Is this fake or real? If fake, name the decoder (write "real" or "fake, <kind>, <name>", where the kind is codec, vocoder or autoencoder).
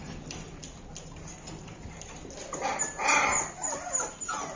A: real